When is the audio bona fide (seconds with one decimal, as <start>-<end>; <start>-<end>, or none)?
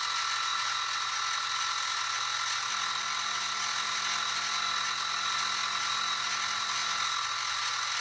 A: 0.0-8.0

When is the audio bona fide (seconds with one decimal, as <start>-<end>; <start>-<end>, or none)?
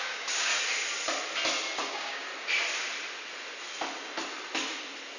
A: 0.5-1.9; 2.3-5.2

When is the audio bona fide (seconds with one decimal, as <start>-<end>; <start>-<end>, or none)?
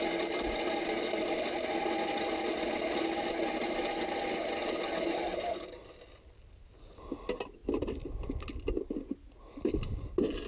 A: 0.0-10.5